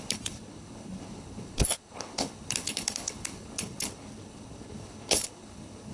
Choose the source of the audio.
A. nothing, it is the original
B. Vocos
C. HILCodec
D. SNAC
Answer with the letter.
C